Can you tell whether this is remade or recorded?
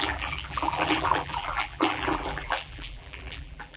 remade